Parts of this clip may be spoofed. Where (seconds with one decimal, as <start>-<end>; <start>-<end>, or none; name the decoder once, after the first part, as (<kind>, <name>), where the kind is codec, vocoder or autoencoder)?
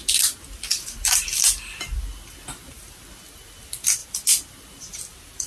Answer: none